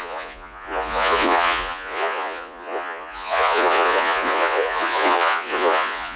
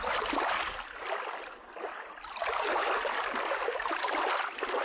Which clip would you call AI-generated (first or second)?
first